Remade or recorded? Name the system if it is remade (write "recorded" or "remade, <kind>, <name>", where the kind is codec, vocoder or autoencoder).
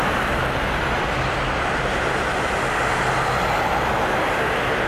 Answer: recorded